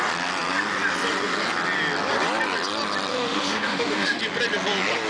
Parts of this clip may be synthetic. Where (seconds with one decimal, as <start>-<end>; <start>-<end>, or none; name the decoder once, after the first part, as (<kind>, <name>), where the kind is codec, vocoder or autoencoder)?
3.1-4.2 (autoencoder, DAC-VAE)

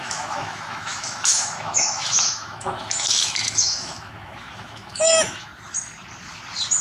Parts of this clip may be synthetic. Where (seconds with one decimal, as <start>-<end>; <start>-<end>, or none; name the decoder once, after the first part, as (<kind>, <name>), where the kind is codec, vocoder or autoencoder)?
0.0-5.5 (autoencoder, DAC-VAE)

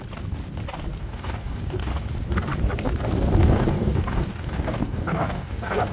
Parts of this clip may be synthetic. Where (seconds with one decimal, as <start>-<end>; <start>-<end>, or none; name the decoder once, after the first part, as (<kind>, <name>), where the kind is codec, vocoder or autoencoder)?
1.0-1.9 (codec, DAC); 3.4-5.9